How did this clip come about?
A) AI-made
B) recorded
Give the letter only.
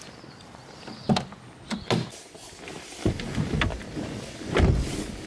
B